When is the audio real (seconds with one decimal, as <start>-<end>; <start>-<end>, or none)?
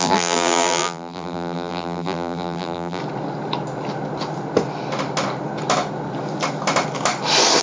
3.0-7.6